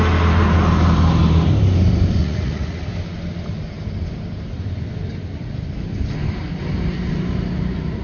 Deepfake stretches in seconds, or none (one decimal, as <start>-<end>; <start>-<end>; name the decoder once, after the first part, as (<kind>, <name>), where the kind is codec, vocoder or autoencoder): 2.2-2.8 (vocoder, Vocos)